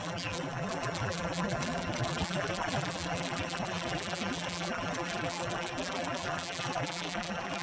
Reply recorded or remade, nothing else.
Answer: remade